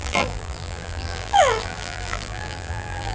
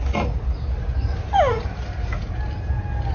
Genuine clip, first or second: second